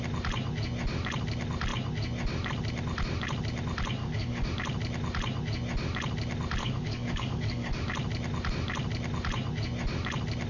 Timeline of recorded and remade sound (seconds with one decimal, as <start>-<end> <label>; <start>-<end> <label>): 0.0-4.0 recorded; 4.0-4.5 remade; 4.5-6.6 recorded; 6.6-7.8 remade; 7.8-10.5 recorded